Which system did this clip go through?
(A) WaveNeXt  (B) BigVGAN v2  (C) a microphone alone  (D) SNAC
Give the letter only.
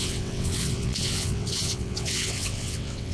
A